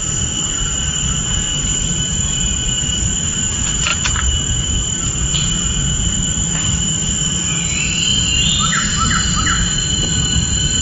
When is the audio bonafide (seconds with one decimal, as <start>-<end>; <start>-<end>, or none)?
none